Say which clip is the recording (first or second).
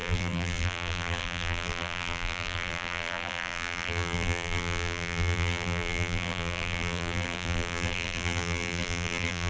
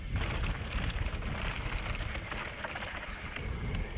second